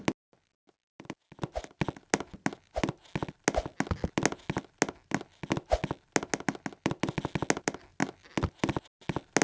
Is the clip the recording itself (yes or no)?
yes